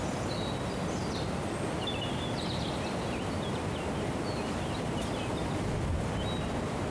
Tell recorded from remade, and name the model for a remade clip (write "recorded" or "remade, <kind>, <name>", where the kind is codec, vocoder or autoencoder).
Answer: recorded